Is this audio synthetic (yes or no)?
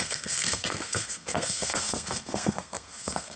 yes